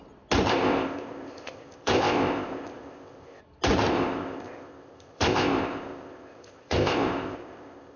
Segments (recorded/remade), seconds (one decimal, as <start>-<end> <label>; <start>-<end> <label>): 0.0-0.5 recorded; 0.5-3.4 remade; 3.4-3.9 recorded; 3.9-8.0 remade